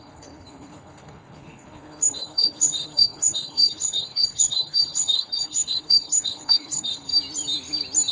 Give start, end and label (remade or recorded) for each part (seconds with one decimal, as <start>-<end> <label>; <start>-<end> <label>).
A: 0.0-7.1 remade; 7.1-8.1 recorded